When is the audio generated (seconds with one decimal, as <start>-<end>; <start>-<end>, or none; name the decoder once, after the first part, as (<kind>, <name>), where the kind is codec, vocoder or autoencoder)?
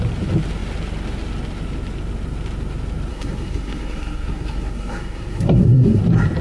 3.1-6.0 (codec, SNAC)